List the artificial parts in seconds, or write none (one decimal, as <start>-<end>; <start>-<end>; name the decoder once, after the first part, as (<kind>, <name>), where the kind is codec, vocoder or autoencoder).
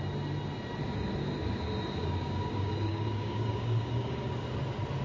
2.0-4.5 (codec, DAC)